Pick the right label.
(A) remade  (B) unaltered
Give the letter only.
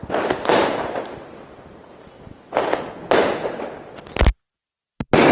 B